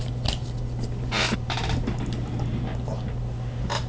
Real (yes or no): yes